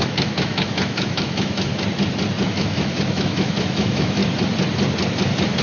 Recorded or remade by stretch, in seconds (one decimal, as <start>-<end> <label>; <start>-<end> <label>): 0.0-1.7 remade; 1.7-2.5 recorded; 2.5-4.2 remade; 4.2-5.6 recorded